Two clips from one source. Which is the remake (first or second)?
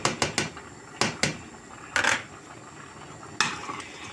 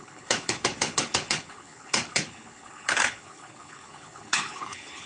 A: second